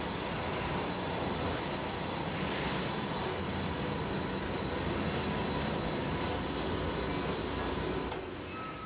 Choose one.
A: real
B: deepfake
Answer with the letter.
A